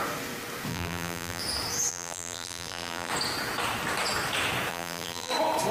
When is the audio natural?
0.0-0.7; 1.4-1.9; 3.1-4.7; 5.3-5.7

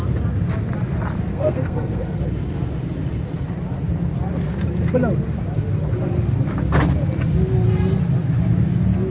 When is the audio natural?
0.0-1.3; 2.2-9.1

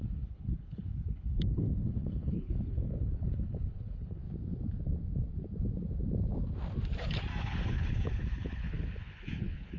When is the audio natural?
4.2-7.4

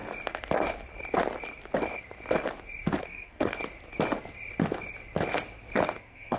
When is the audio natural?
0.0-3.0; 3.6-6.0

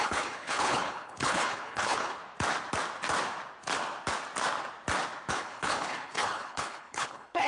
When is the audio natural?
2.2-5.3

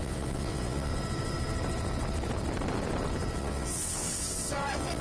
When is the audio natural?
0.9-3.4

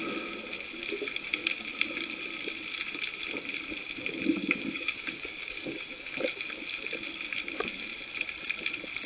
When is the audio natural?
0.0-4.4; 6.1-9.1